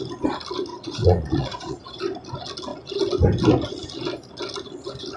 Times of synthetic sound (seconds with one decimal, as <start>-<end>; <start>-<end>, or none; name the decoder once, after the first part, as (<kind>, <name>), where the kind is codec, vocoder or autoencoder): 0.7-2.0 (vocoder, Vocos)